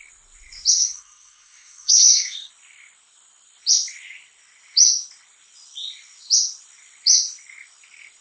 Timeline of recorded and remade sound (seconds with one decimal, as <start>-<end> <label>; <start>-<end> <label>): 0.0-0.8 recorded; 0.8-2.5 remade; 2.5-8.2 recorded